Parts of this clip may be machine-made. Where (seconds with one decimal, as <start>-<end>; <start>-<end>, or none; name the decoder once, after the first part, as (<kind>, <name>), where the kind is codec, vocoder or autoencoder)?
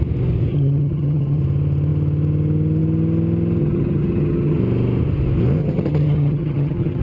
0.5-1.4 (vocoder, HiFi-GAN); 3.6-4.6; 5.6-7.0